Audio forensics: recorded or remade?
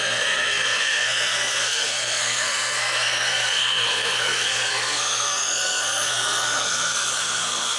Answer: remade